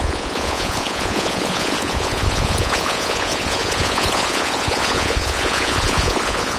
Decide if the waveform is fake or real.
fake